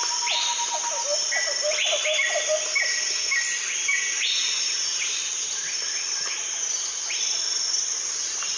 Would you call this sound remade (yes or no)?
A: no